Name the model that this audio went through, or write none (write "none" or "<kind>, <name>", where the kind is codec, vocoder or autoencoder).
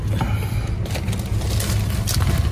none